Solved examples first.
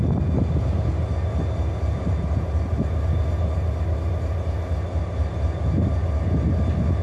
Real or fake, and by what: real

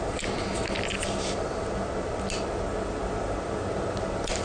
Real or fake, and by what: real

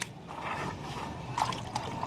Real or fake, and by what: real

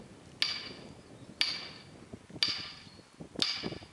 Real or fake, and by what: real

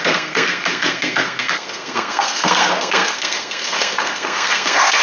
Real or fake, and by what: fake, codec, SNAC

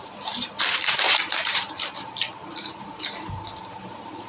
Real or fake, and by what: fake, vocoder, BigVGAN v2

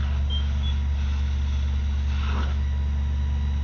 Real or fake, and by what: real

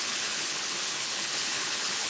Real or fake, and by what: fake, codec, HILCodec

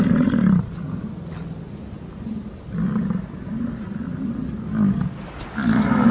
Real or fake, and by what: real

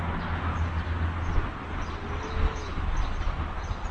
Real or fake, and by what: real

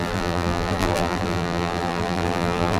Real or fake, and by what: fake, vocoder, BigVGAN v2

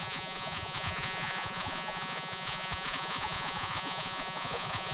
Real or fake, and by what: fake, vocoder, Vocos